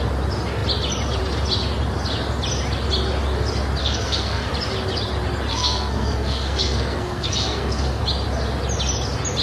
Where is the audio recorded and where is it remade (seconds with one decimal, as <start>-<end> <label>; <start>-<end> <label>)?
0.0-3.8 recorded; 3.8-4.5 remade; 4.5-5.5 recorded; 5.5-8.0 remade; 8.0-9.4 recorded